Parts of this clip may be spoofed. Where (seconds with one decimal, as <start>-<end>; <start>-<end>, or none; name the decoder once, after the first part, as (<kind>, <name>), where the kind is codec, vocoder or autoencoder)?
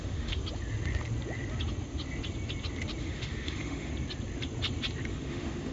0.0-0.4 (autoencoder, DAC-VAE); 3.0-3.9; 5.1-5.7